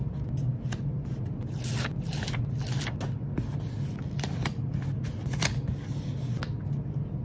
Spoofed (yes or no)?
no